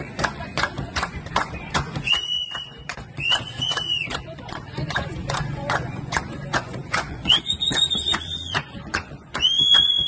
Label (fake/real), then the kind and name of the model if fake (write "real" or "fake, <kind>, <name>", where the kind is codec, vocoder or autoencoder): fake, vocoder, Vocos